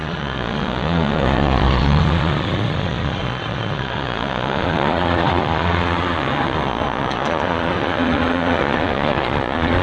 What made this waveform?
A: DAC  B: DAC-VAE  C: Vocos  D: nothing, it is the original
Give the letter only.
C